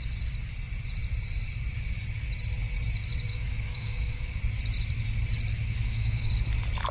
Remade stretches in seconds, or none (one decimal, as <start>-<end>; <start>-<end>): 3.3-4.4; 5.5-6.3